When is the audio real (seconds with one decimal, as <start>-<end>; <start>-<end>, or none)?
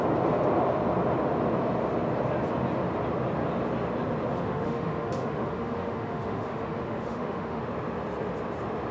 0.0-4.3; 7.6-8.9